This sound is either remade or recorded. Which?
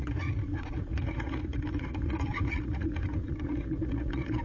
remade